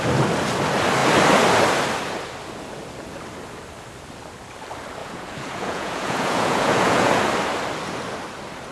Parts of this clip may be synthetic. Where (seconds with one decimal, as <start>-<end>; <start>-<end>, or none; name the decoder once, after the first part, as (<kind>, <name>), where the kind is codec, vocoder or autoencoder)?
5.0-7.2 (vocoder, Vocos)